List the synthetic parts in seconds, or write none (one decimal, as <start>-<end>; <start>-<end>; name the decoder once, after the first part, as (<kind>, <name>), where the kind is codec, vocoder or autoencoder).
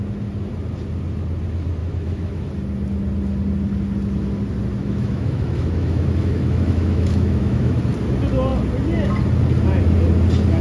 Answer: 1.8-2.5 (autoencoder, DAC-VAE); 4.8-7.8